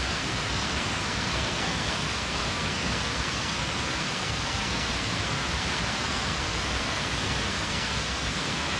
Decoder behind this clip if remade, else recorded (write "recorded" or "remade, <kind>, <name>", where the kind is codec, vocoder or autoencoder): remade, codec, SNAC